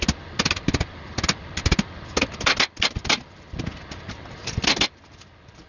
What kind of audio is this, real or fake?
real